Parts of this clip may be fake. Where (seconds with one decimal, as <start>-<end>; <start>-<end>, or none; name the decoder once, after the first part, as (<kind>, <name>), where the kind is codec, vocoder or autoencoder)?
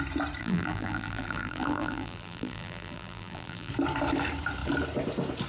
0.4-3.7 (vocoder, BigVGAN v2)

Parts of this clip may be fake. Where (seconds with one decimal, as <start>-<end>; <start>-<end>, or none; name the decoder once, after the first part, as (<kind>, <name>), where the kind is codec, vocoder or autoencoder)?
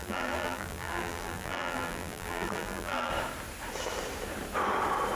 0.0-3.1 (vocoder, BigVGAN v2)